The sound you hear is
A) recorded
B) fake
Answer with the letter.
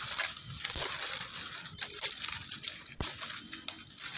A